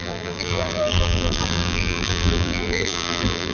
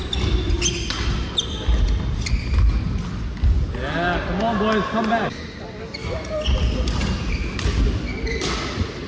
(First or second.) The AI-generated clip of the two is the first